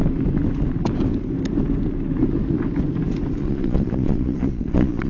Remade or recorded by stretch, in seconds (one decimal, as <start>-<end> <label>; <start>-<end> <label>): 0.0-3.4 recorded; 3.4-5.1 remade